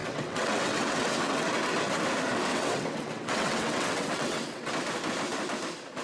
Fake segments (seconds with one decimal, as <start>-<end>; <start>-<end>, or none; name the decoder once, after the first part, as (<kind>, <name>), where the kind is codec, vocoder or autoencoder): 0.0-1.5 (vocoder, WaveNeXt); 2.5-4.7

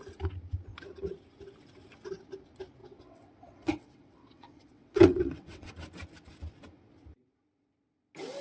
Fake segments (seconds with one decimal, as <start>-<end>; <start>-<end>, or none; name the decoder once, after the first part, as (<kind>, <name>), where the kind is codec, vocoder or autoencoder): 2.8-5.7 (vocoder, WaveNeXt)

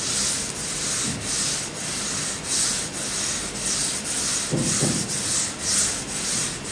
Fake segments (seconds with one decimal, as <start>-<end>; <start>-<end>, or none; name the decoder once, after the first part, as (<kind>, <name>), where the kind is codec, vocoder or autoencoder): none

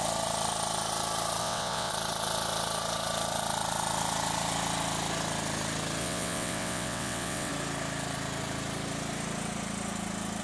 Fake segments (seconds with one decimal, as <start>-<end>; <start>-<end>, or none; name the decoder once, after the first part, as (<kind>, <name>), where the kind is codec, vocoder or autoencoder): 1.4-1.9 (vocoder, WaveNeXt); 6.0-7.5

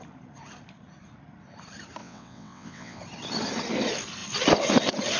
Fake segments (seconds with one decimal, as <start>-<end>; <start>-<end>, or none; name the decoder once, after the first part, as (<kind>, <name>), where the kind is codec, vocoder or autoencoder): 2.0-3.0 (vocoder, WaveNeXt)

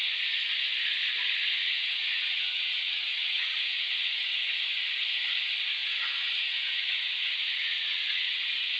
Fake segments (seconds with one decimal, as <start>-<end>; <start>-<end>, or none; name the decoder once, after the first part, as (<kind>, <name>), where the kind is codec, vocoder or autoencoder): 1.6-4.3 (vocoder, WaveNeXt); 5.8-8.4